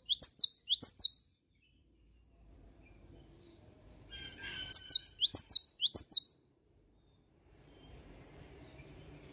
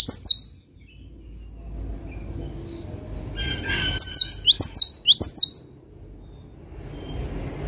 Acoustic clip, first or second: second